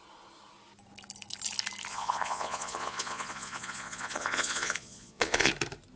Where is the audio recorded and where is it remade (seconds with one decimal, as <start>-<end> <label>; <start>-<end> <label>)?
0.0-1.9 recorded; 1.9-5.5 remade; 5.5-6.0 recorded